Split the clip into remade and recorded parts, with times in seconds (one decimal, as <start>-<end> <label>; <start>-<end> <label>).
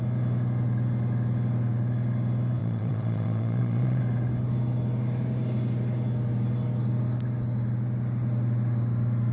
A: 0.0-2.6 recorded; 2.6-4.0 remade; 4.0-9.3 recorded